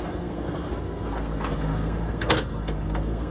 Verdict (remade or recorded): remade